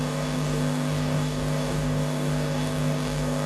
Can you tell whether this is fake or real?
fake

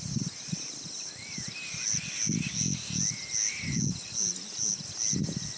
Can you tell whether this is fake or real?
real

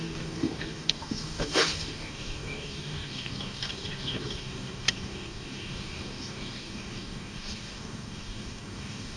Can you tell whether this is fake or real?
fake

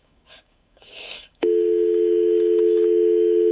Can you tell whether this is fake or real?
fake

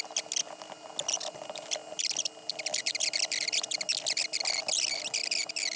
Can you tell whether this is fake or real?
real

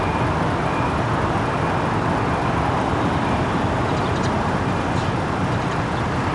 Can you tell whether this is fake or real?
real